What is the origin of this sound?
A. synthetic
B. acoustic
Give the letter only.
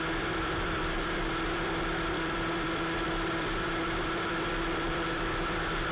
A